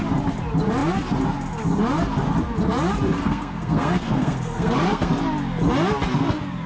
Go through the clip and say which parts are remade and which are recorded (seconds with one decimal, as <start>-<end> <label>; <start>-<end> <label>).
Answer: 0.0-3.2 recorded; 3.2-5.1 remade; 5.1-6.7 recorded